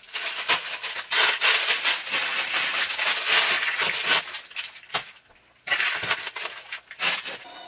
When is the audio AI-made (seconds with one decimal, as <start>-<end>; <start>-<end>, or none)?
none